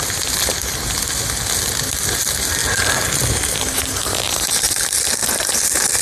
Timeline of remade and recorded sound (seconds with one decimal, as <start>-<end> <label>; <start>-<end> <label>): 0.0-6.0 recorded